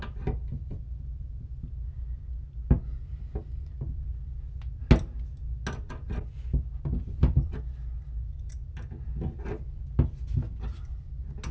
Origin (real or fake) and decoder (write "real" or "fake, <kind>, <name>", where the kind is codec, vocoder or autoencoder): real